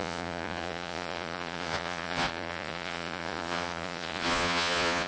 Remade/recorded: remade